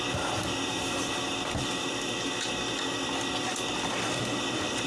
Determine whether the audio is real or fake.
real